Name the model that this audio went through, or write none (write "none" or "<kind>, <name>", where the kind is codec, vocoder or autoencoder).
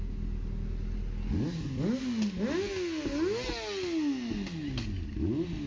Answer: none